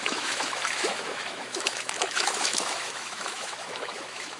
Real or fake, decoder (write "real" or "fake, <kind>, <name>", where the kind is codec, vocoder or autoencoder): fake, autoencoder, DAC-VAE